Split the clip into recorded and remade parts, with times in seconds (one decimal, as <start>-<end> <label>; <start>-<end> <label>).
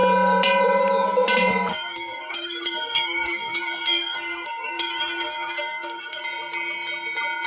0.0-1.7 recorded; 1.7-6.2 remade; 6.2-7.5 recorded